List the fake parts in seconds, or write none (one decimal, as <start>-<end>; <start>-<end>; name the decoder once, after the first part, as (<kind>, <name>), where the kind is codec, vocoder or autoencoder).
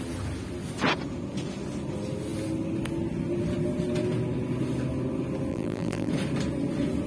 5.5-6.1 (vocoder, BigVGAN v2)